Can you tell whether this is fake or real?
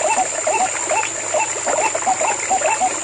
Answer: real